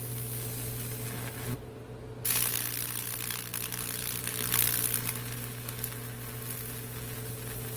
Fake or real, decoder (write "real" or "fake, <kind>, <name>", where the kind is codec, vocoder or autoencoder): real